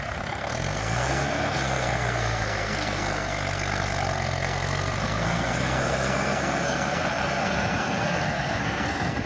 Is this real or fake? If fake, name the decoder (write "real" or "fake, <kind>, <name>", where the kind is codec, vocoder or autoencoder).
fake, codec, SNAC